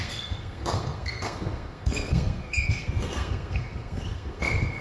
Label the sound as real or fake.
fake